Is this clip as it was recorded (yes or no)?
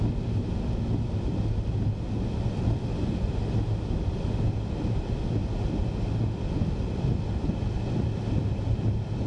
yes